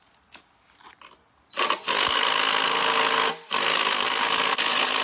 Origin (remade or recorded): recorded